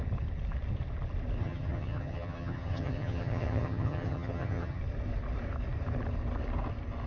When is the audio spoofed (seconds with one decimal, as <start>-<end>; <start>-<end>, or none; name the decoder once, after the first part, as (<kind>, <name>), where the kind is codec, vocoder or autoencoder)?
1.4-4.8 (vocoder, HiFi-GAN)